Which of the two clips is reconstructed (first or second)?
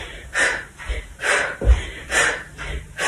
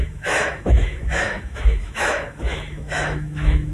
second